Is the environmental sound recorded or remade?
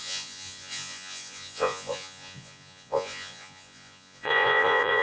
remade